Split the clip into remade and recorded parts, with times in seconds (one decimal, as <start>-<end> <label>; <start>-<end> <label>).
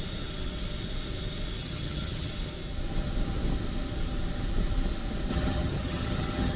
0.0-1.6 recorded; 1.6-2.3 remade; 2.3-5.3 recorded; 5.3-6.6 remade